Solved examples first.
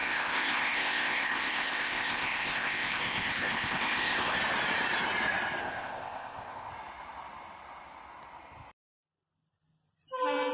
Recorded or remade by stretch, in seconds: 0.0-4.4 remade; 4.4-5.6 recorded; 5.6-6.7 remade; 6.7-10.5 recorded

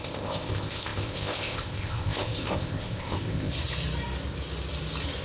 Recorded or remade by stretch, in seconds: 0.0-3.5 remade; 3.5-5.2 recorded

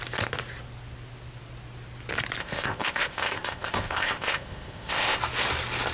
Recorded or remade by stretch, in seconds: 0.0-2.4 recorded; 2.4-5.2 remade; 5.2-5.9 recorded

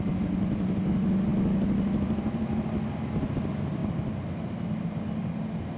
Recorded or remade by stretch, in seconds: 0.0-5.8 recorded

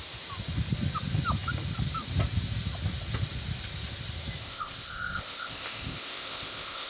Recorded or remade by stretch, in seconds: 0.0-4.4 recorded; 4.4-6.9 remade

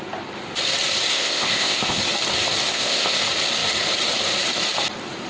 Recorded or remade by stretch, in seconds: 0.0-1.1 recorded; 1.1-2.0 remade; 2.0-2.7 recorded; 2.7-3.2 remade; 3.2-5.3 recorded

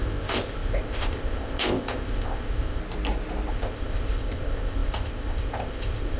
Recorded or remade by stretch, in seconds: 0.0-2.8 remade; 2.8-3.5 recorded; 3.5-6.2 remade

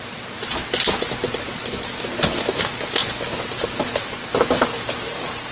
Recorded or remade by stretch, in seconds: 0.0-5.5 recorded